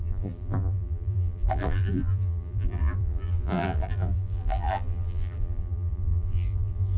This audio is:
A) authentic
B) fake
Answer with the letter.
B